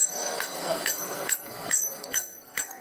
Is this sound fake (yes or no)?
yes